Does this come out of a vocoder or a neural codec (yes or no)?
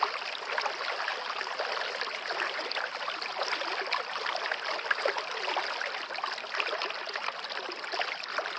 no